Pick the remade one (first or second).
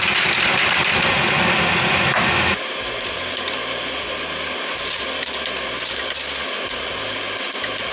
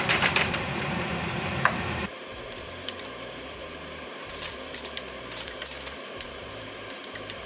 second